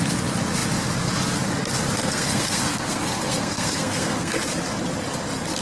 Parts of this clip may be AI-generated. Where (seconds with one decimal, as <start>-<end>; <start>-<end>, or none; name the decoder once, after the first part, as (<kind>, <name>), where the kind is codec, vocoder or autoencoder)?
2.0-4.3 (codec, SNAC)